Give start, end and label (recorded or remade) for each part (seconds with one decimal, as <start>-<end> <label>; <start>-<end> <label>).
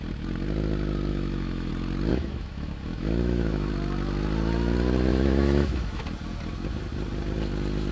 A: 0.0-1.1 recorded; 1.1-1.7 remade; 1.7-2.1 recorded; 2.1-3.7 remade; 3.7-5.1 recorded; 5.1-6.0 remade; 6.0-7.9 recorded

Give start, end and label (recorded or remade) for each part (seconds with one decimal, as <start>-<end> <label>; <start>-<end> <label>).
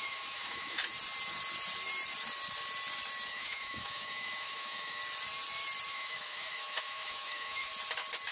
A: 0.0-0.8 remade; 0.8-3.3 recorded; 3.3-5.0 remade; 5.0-5.9 recorded; 5.9-7.7 remade; 7.7-8.3 recorded